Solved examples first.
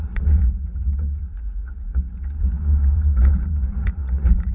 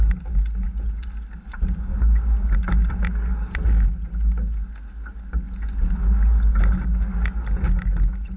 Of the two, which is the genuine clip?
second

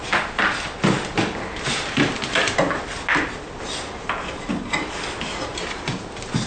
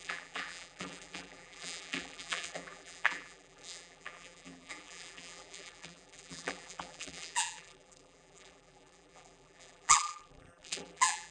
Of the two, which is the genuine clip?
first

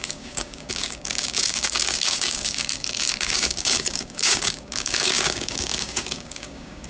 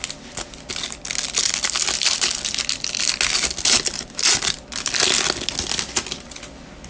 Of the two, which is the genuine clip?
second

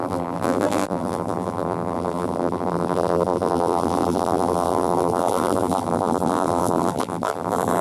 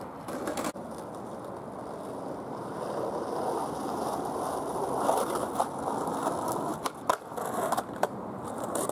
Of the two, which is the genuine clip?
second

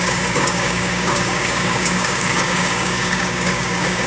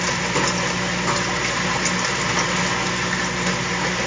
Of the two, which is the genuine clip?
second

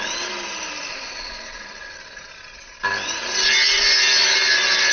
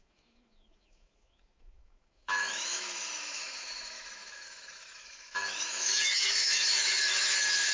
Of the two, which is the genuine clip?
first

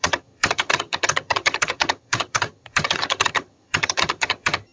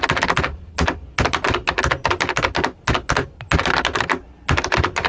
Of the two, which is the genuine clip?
second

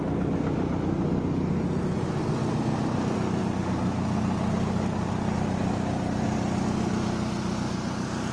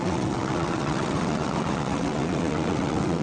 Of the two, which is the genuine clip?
first